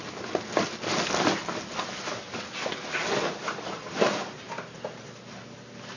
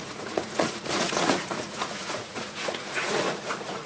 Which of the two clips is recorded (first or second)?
first